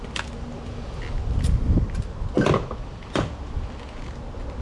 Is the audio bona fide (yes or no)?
yes